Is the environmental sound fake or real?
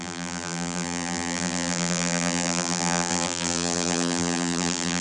fake